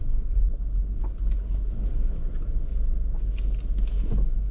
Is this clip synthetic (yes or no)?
no